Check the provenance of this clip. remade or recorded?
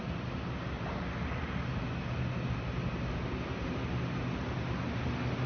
recorded